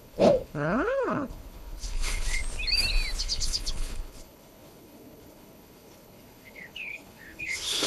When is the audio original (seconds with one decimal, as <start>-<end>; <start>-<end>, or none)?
2.4-3.2

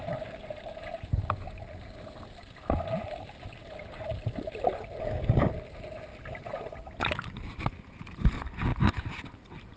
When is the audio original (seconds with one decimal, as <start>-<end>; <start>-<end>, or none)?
0.0-9.8